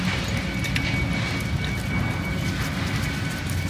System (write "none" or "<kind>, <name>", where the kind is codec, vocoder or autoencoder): none